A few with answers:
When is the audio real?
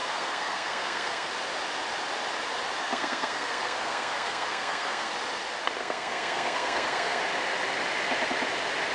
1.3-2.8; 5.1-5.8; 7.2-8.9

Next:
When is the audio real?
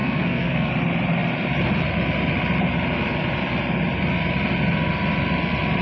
0.7-5.8